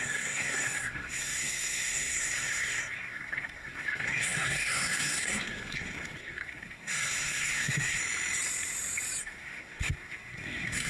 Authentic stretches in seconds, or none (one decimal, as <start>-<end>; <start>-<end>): 8.0-9.2